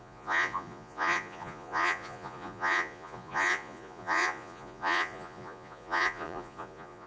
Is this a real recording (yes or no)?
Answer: no